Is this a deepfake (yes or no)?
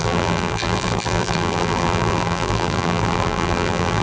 yes